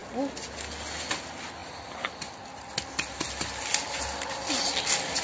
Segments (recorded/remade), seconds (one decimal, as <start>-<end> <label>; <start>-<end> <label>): 0.0-5.2 recorded

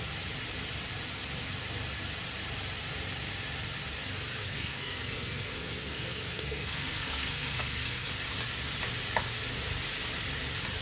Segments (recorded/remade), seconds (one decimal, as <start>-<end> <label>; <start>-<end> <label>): 0.0-4.4 recorded; 4.4-8.1 remade; 8.1-10.8 recorded

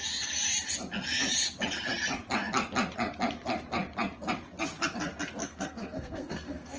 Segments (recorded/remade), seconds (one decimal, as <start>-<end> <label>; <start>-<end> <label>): 0.0-5.4 recorded; 5.4-6.8 remade

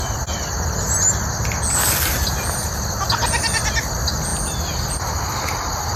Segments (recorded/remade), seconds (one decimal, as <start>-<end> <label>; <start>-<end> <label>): 0.0-6.0 recorded

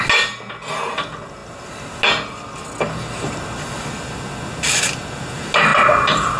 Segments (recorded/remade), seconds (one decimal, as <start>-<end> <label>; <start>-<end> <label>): 0.0-6.4 recorded

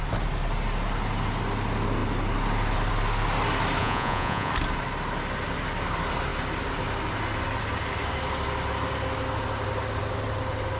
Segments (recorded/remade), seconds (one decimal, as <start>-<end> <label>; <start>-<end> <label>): 0.0-3.8 recorded; 3.8-4.5 remade; 4.5-10.8 recorded